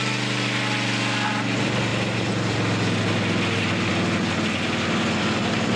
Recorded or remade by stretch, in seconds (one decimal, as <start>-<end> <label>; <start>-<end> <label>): 0.0-5.8 recorded